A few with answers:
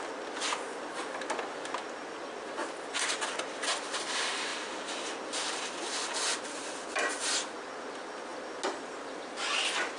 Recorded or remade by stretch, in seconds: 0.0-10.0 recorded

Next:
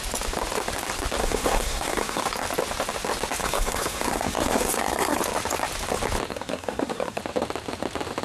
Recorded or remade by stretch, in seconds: 0.0-1.2 recorded; 1.2-2.2 remade; 2.2-3.4 recorded; 3.4-5.2 remade; 5.2-6.3 recorded; 6.3-7.2 remade; 7.2-8.2 recorded

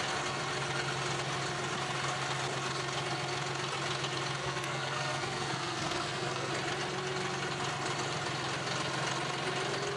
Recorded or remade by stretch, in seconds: 0.0-4.4 recorded; 4.4-6.5 remade; 6.5-10.0 recorded

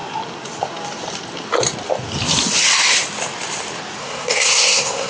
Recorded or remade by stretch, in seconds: 0.0-4.0 recorded; 4.0-5.1 remade

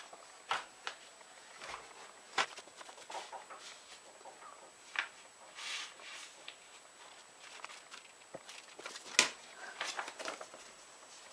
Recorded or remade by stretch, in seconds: 0.0-11.3 recorded

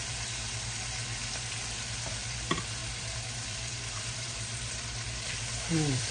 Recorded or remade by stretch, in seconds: 0.0-1.0 remade; 1.0-2.8 recorded; 2.8-6.1 remade

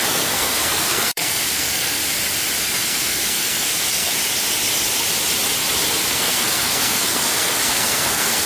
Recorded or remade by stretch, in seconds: 0.0-2.0 remade; 2.0-2.6 recorded; 2.6-4.1 remade; 4.1-6.1 recorded; 6.1-8.5 remade

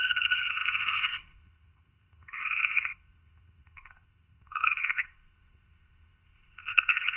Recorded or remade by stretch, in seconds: 0.0-7.2 remade